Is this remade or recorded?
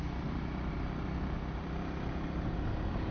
recorded